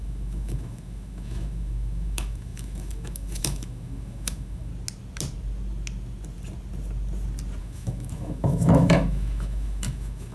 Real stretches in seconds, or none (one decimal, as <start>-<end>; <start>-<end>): 4.7-7.6